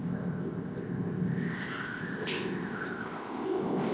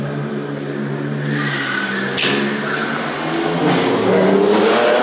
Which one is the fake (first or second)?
first